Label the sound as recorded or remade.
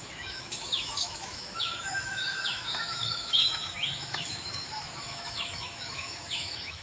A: remade